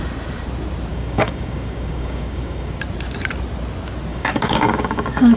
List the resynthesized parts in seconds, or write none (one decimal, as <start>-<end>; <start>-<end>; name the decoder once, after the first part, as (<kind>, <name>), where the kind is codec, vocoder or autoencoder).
0.9-2.8 (codec, DAC); 4.1-5.4